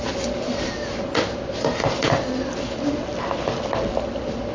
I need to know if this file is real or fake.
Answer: real